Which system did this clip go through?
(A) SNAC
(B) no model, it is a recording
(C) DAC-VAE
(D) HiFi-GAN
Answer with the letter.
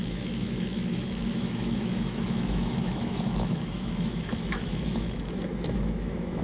C